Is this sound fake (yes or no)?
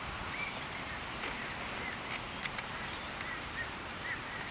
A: no